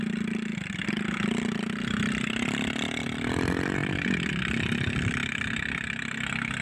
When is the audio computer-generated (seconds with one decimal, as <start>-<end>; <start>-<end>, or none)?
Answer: 3.8-4.3